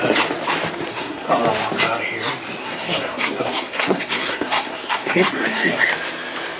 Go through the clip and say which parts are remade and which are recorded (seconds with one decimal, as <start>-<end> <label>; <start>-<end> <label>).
0.0-0.9 recorded; 0.9-1.4 remade; 1.4-2.6 recorded; 2.6-5.9 remade; 5.9-6.6 recorded